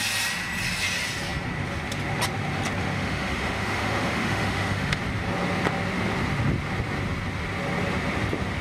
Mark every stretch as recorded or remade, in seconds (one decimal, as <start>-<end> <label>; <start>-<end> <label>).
0.0-2.8 recorded; 2.8-5.0 remade; 5.0-8.6 recorded